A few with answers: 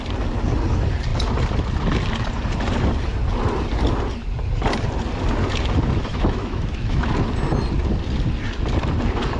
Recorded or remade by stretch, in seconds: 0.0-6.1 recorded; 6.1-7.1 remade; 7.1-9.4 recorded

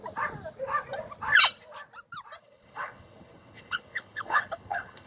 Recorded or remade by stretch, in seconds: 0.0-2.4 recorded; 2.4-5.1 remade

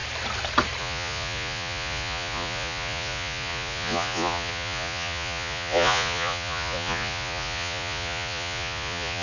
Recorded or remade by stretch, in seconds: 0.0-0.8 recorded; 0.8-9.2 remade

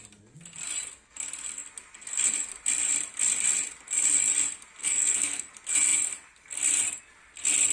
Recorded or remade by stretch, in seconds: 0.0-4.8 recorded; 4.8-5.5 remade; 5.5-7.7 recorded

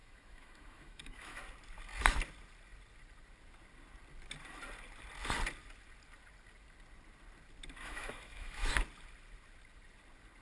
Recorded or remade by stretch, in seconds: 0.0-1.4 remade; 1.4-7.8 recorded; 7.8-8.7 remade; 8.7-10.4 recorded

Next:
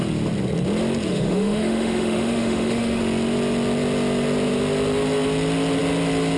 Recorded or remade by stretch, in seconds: 0.0-1.1 recorded; 1.1-3.0 remade; 3.0-6.4 recorded